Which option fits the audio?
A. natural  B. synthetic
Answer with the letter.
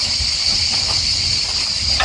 A